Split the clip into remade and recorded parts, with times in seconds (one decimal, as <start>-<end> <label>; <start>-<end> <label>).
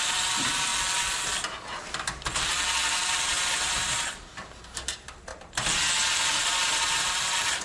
0.0-0.7 remade; 0.7-2.9 recorded; 2.9-5.3 remade; 5.3-6.1 recorded; 6.1-7.6 remade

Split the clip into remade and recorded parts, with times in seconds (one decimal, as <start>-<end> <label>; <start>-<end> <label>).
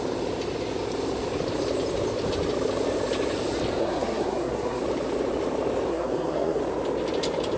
0.0-3.8 recorded; 3.8-4.8 remade; 4.8-5.9 recorded; 5.9-6.6 remade; 6.6-7.6 recorded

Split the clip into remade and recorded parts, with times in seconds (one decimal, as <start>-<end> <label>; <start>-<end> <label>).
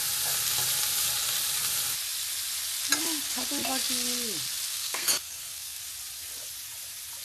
0.0-4.7 recorded; 4.7-5.8 remade; 5.8-7.2 recorded